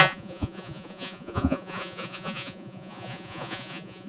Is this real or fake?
fake